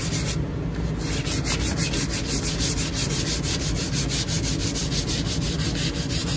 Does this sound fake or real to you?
real